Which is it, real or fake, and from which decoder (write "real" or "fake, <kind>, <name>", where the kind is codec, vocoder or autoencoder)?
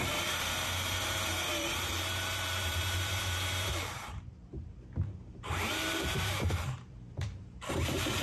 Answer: fake, vocoder, BigVGAN v2